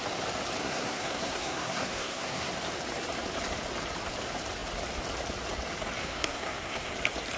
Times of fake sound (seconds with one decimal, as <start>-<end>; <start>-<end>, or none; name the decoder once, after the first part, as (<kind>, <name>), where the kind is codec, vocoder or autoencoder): 0.6-2.5 (codec, SNAC); 6.0-6.9